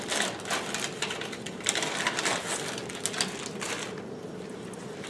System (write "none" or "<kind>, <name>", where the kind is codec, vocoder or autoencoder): none